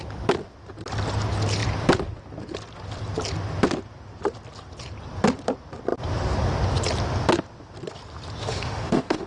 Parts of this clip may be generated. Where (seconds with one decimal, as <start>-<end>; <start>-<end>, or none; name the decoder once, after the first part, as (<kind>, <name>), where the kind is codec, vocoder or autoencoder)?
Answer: 8.4-9.3 (autoencoder, DAC-VAE)

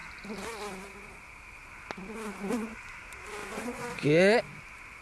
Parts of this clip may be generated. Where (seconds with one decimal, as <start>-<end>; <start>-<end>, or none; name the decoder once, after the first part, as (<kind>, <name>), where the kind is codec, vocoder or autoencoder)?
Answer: 3.4-4.4 (vocoder, Vocos)

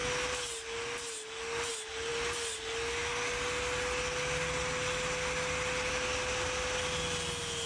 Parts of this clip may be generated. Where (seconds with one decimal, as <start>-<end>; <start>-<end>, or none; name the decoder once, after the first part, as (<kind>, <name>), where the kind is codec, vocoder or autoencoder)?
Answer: none

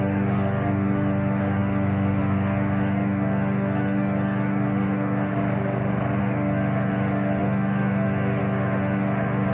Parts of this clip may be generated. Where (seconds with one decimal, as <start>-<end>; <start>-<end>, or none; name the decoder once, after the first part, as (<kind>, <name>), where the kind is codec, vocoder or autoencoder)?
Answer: 0.0-5.3 (autoencoder, DAC-VAE); 6.2-9.5

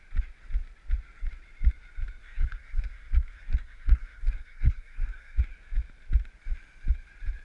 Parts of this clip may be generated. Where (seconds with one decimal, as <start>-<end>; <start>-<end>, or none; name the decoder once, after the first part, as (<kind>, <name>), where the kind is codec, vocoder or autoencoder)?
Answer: 2.2-5.4 (codec, SNAC)

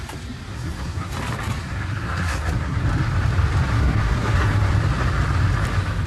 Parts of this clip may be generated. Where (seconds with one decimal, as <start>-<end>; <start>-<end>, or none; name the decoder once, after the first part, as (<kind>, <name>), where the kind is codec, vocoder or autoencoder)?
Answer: 0.5-1.1 (codec, SNAC); 1.6-2.8; 3.7-4.7

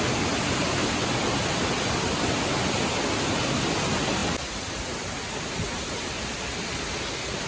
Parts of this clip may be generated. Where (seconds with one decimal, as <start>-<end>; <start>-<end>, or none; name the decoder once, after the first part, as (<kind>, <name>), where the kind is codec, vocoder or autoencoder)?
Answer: none